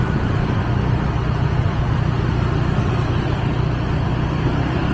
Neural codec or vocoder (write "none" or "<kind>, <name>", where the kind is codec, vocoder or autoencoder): none